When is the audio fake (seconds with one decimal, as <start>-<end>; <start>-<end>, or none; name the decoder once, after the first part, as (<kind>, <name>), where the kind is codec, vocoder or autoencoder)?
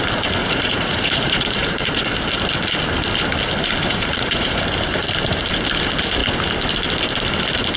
0.4-2.0 (vocoder, Vocos); 3.8-4.6